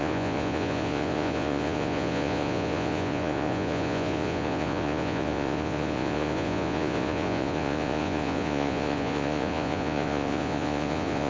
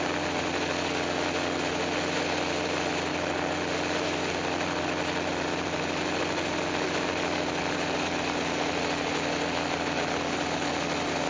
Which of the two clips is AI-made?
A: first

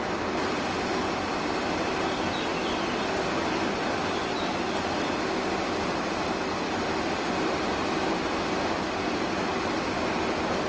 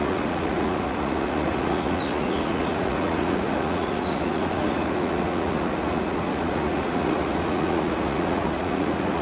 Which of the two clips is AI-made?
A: second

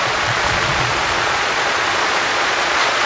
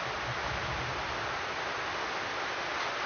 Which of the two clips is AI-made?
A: first